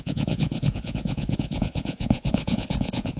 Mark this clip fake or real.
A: fake